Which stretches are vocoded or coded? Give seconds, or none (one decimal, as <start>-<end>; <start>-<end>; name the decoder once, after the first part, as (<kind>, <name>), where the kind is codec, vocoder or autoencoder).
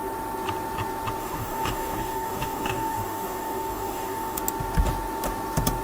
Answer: 1.2-4.4 (codec, DAC)